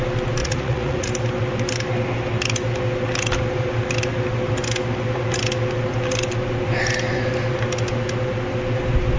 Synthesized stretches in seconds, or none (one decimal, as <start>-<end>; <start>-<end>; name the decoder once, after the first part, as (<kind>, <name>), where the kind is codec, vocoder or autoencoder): 0.4-1.1 (vocoder, Vocos)